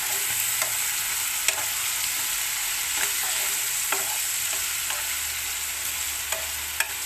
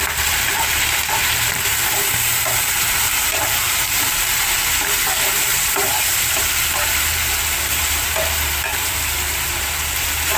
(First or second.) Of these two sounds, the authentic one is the first